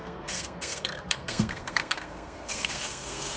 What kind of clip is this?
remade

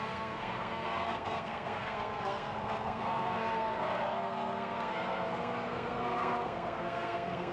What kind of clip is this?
remade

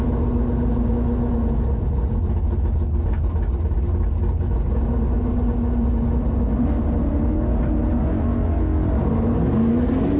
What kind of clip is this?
recorded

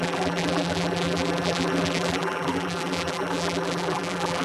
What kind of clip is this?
remade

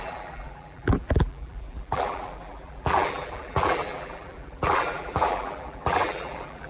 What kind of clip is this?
remade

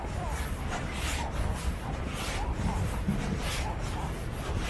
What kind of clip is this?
recorded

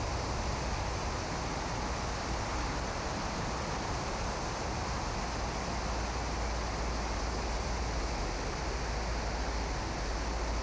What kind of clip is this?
recorded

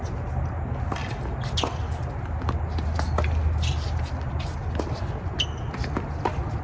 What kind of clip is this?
recorded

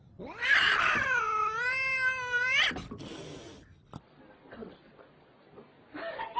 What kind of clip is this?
recorded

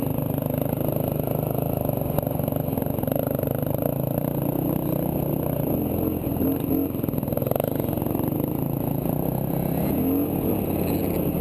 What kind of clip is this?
recorded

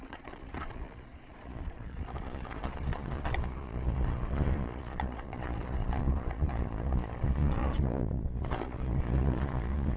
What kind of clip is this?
remade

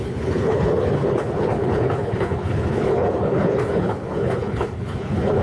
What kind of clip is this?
remade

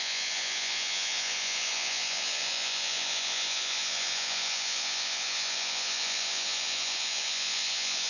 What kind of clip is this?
remade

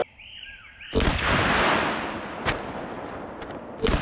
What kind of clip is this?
recorded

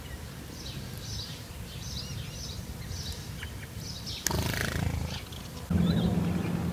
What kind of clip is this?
recorded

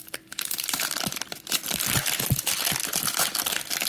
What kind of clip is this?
recorded